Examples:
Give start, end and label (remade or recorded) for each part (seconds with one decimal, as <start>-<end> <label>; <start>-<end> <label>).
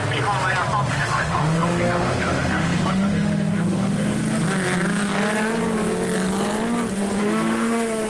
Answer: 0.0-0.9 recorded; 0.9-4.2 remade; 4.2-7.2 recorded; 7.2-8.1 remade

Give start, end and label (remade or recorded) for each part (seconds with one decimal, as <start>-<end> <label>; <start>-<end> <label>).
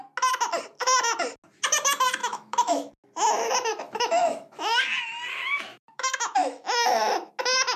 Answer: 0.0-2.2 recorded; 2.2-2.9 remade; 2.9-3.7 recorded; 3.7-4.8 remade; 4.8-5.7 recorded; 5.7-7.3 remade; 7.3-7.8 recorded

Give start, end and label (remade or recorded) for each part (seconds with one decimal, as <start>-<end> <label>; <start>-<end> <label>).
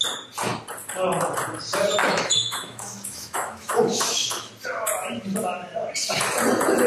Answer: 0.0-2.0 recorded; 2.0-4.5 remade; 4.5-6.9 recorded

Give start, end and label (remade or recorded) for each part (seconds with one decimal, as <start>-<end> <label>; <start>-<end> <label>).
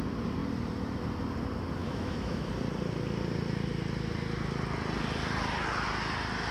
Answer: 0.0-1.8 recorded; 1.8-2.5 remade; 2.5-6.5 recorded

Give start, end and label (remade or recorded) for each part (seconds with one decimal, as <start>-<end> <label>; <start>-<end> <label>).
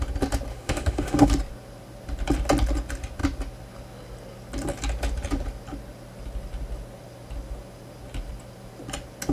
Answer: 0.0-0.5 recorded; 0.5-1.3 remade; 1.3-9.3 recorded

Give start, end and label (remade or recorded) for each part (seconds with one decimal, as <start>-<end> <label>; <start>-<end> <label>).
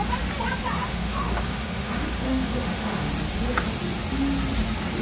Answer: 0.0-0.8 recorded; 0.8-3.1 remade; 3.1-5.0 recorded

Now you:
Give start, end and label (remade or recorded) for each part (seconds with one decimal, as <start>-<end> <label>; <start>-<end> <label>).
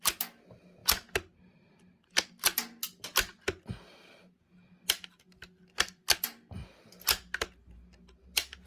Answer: 0.0-8.7 recorded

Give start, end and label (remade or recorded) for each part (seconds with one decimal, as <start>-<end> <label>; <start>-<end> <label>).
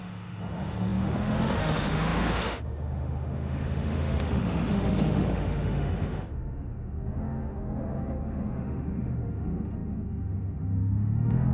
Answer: 0.0-11.5 remade